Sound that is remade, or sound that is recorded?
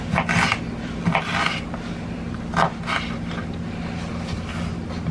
recorded